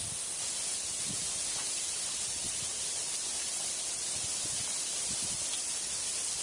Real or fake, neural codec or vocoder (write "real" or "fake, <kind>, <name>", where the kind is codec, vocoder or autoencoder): real